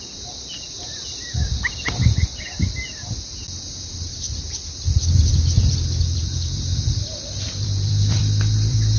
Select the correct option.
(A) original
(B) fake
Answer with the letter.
B